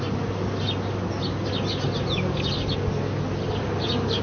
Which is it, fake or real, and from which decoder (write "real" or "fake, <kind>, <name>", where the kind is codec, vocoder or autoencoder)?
real